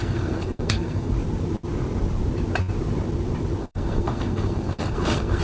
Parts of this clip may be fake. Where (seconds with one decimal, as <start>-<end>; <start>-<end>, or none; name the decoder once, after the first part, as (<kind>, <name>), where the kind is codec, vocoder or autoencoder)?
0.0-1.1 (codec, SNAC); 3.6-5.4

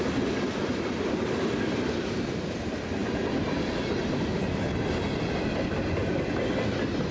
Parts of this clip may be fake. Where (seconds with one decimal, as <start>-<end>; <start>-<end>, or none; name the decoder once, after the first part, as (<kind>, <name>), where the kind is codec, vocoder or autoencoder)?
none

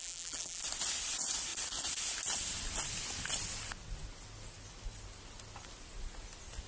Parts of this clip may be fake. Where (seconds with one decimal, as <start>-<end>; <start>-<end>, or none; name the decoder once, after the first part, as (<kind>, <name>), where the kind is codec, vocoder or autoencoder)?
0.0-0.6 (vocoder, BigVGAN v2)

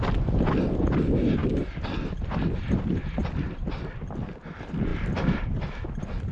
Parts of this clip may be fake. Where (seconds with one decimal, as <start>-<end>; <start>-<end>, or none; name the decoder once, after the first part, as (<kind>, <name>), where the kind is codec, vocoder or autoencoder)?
none

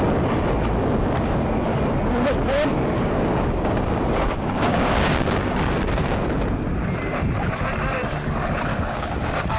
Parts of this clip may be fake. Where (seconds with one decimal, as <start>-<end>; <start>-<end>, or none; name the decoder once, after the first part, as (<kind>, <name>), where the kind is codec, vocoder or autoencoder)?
0.8-1.8 (codec, DAC); 2.7-5.6; 8.7-9.6